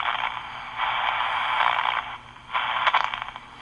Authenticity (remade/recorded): recorded